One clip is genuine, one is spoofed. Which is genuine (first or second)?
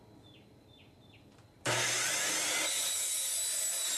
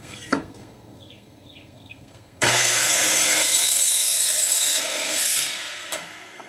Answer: first